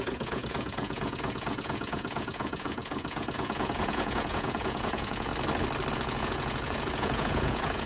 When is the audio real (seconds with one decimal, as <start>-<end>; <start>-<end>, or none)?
5.3-5.9